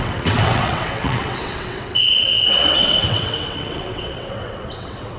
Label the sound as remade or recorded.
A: remade